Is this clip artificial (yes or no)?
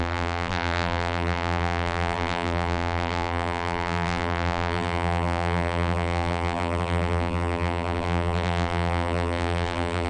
yes